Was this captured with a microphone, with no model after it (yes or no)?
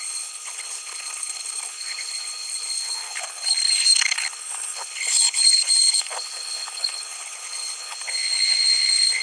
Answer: no